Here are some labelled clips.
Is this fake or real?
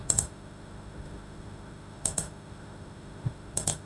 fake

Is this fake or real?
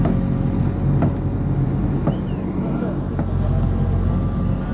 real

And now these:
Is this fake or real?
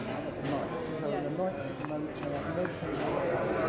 real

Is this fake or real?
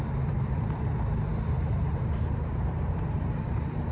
fake